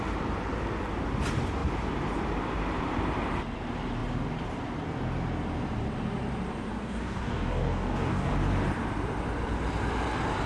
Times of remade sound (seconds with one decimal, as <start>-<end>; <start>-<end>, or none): 6.7-8.3